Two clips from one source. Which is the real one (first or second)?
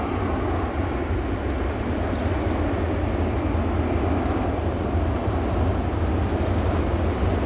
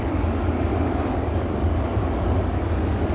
first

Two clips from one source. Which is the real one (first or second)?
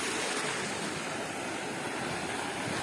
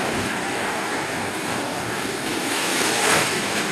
first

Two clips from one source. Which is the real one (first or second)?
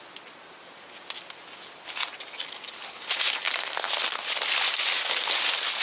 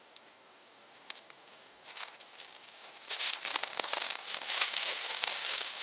first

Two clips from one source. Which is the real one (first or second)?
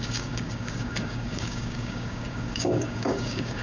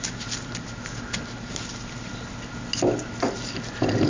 second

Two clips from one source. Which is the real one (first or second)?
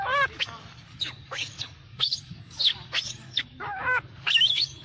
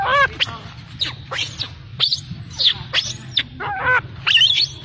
second